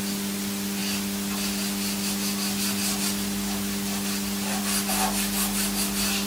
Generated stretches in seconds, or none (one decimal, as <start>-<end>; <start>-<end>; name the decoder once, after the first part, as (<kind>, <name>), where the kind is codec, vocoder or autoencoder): none